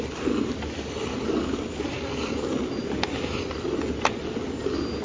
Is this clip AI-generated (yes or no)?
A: no